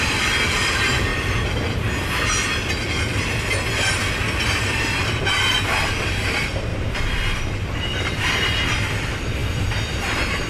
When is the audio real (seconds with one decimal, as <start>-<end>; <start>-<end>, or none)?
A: 1.1-5.5; 6.7-7.3